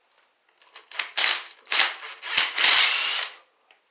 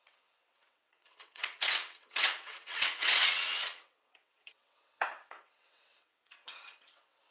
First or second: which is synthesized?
second